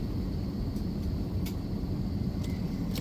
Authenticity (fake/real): real